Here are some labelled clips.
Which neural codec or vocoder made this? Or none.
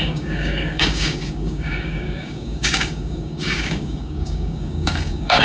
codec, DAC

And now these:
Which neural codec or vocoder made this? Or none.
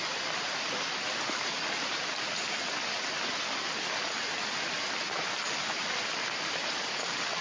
none